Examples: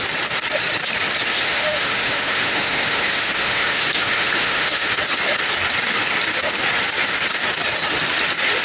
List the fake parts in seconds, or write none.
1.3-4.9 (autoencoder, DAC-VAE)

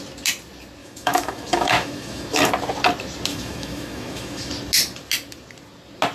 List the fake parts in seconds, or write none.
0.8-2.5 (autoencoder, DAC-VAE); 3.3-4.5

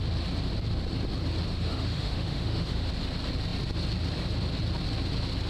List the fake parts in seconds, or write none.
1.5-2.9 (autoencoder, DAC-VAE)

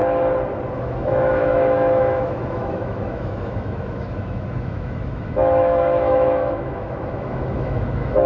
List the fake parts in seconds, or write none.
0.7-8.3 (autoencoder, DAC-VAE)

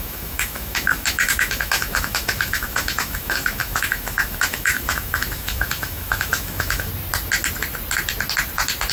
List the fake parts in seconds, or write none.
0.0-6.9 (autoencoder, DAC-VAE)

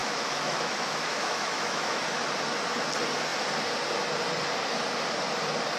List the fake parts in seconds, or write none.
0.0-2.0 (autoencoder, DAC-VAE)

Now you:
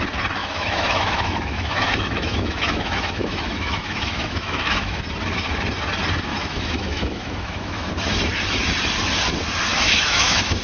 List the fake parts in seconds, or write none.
0.4-5.0 (autoencoder, DAC-VAE); 6.3-7.9; 9.7-10.6

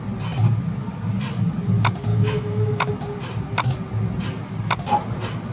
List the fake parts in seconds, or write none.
2.1-2.9 (autoencoder, DAC-VAE)